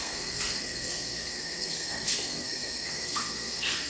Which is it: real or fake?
fake